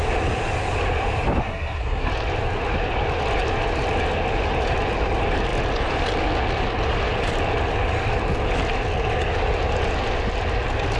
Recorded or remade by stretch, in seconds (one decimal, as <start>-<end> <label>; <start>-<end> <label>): 0.0-1.4 recorded; 1.4-2.1 remade; 2.1-11.0 recorded